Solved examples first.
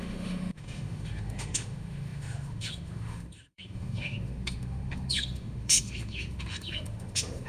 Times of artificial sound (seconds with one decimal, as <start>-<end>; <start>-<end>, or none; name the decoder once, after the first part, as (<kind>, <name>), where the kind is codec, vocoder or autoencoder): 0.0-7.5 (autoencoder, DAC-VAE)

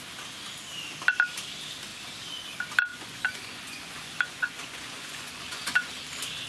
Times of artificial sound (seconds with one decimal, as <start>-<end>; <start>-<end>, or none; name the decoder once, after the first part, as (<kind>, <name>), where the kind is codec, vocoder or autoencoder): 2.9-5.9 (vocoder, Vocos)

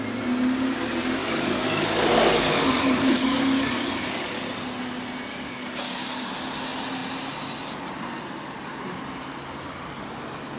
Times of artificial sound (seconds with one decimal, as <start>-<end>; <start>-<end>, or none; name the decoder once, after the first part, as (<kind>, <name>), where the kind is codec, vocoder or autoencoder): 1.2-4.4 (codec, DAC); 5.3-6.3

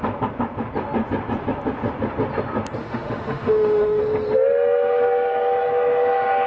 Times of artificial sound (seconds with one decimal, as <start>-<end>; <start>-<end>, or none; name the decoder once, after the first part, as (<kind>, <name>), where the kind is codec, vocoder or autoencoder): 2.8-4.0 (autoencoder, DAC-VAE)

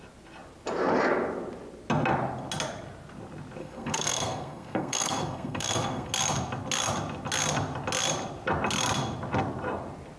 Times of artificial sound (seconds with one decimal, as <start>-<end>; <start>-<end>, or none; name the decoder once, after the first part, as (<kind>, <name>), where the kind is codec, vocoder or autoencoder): 3.6-6.1 (codec, SNAC)

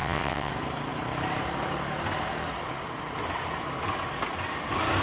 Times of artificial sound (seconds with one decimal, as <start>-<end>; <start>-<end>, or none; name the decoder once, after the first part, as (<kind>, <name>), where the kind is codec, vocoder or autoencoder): 0.0-0.5 (vocoder, WaveNeXt)

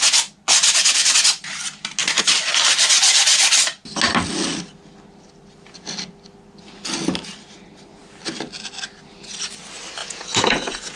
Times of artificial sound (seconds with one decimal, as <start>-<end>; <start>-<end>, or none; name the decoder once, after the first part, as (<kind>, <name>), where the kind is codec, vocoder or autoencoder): 10.0-11.0 (vocoder, Vocos)

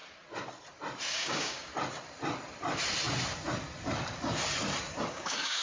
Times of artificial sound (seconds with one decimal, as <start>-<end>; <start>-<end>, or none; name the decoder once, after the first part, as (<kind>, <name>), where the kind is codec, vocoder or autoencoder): 1.1-1.7 (codec, DAC); 5.1-5.6